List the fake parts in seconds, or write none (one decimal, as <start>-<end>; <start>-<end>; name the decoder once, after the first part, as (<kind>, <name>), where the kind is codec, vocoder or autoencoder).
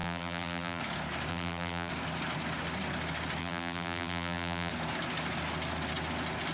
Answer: 0.0-0.8 (vocoder, BigVGAN v2); 1.3-1.9; 3.4-4.7